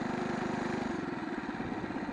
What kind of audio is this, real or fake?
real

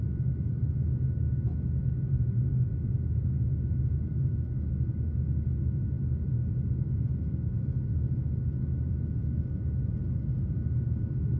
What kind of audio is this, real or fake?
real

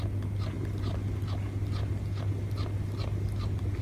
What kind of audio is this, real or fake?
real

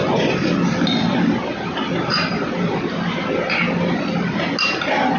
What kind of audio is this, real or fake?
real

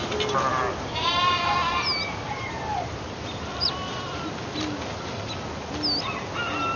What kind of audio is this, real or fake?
real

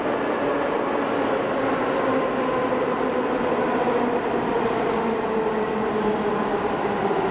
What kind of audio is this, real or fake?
real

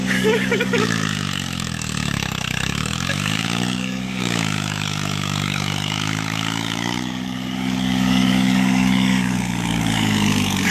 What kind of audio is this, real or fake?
fake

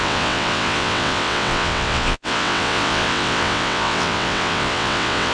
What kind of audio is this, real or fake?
fake